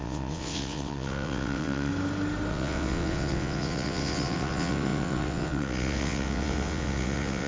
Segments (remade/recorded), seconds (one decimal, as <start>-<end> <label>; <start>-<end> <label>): 0.0-1.9 remade; 1.9-2.5 recorded; 2.5-7.5 remade